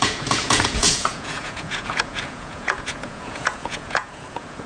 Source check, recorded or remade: remade